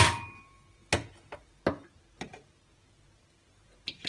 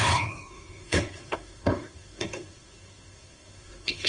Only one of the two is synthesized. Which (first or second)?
second